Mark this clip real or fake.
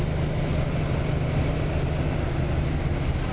real